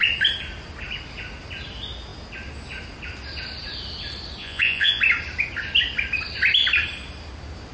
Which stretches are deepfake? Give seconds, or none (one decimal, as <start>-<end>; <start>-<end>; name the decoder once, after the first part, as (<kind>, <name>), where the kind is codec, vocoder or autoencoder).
4.4-5.0 (vocoder, Vocos)